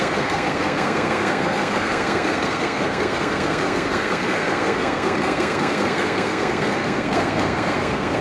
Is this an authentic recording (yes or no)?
no